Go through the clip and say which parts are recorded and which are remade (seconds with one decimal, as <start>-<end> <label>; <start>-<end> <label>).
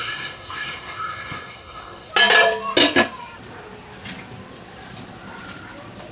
0.0-2.1 remade; 2.1-6.1 recorded